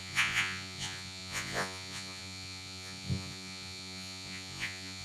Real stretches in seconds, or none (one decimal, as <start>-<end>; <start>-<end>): none

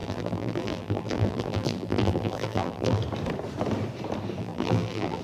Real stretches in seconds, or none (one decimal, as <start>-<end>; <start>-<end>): 3.0-4.4

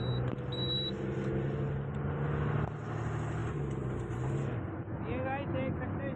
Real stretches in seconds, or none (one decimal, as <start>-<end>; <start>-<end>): 0.0-6.2

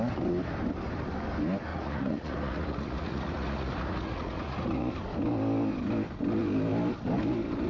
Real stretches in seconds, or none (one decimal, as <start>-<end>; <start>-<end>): 0.0-1.7; 4.9-7.7